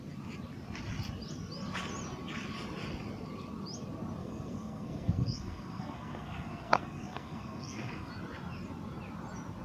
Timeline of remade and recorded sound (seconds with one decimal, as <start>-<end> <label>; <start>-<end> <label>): 0.0-4.2 recorded; 4.2-8.1 remade; 8.1-9.6 recorded